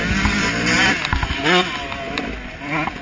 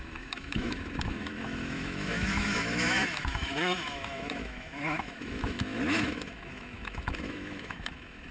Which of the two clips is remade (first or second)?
second